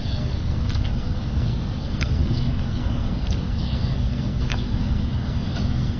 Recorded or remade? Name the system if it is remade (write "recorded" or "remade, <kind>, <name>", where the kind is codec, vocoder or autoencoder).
remade, codec, SNAC